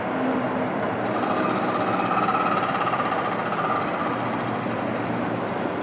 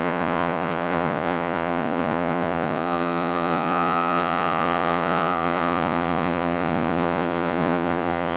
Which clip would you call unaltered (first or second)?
first